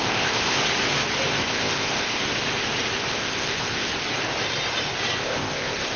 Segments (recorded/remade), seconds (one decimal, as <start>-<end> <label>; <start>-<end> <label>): 0.0-0.6 remade; 0.6-1.4 recorded; 1.4-2.2 remade; 2.2-3.1 recorded; 3.1-3.9 remade; 3.9-5.2 recorded; 5.2-6.0 remade